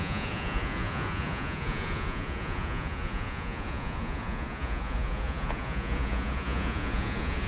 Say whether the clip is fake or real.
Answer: fake